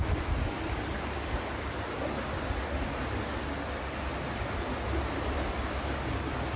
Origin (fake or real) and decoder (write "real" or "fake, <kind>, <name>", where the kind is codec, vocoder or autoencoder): real